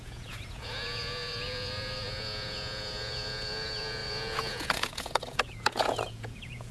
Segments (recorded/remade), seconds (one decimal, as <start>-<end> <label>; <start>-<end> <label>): 0.0-6.7 remade